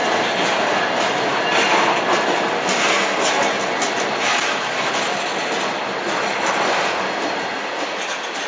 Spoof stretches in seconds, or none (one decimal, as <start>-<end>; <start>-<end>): none